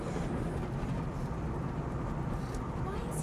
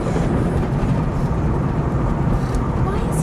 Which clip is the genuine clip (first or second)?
first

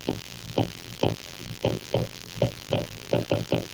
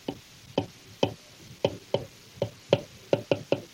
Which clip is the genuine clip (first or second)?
second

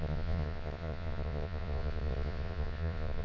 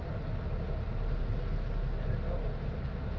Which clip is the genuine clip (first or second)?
second